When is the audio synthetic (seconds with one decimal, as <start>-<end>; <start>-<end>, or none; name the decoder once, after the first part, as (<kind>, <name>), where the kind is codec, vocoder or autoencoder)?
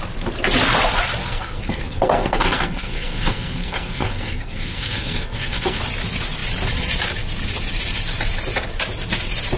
1.2-5.8 (codec, SNAC)